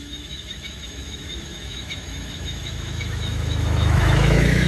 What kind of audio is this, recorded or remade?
remade